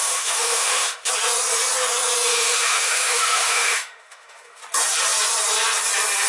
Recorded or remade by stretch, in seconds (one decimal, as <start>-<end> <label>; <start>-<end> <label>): 0.0-1.1 remade; 1.1-2.3 recorded; 2.3-4.6 remade; 4.6-6.3 recorded